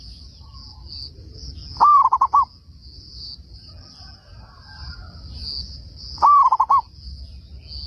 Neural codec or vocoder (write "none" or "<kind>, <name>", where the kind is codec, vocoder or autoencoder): none